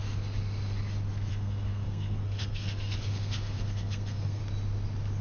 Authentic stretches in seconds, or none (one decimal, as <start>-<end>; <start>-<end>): 0.0-1.3; 4.4-5.2